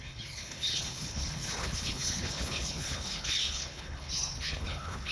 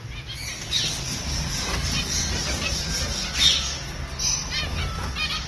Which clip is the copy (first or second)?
first